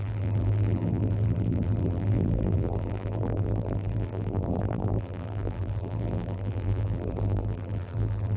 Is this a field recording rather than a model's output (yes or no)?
no